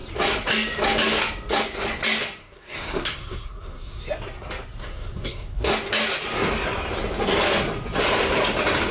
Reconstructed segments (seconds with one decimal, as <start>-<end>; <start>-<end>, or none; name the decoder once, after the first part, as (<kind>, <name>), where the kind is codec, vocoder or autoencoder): 2.4-4.0 (codec, SNAC); 4.8-5.7